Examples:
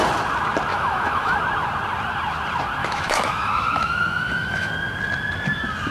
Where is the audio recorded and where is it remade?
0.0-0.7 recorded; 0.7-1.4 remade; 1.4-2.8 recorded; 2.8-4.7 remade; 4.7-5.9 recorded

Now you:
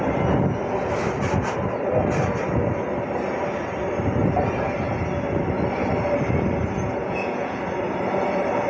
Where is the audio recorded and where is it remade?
0.0-7.0 recorded; 7.0-7.6 remade; 7.6-8.7 recorded

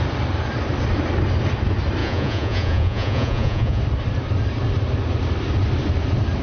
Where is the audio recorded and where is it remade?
0.0-2.0 recorded; 2.0-3.8 remade; 3.8-6.4 recorded

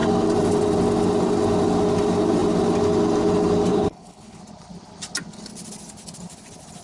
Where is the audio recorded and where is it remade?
0.0-3.7 recorded; 3.7-4.4 remade; 4.4-6.8 recorded

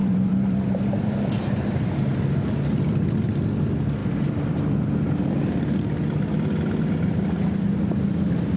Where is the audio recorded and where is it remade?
0.0-2.0 remade; 2.0-4.0 recorded; 4.0-5.1 remade; 5.1-8.6 recorded

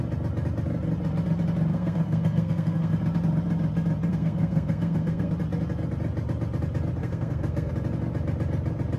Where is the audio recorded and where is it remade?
0.0-1.7 recorded; 1.7-2.9 remade; 2.9-4.1 recorded; 4.1-5.3 remade; 5.3-7.0 recorded; 7.0-7.7 remade; 7.7-9.0 recorded

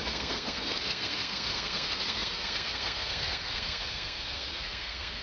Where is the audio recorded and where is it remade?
0.0-5.2 remade

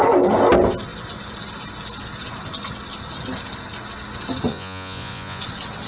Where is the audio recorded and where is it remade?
0.0-4.5 recorded; 4.5-5.4 remade; 5.4-5.9 recorded